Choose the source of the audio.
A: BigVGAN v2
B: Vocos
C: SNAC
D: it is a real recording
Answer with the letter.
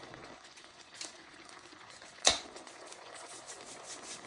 B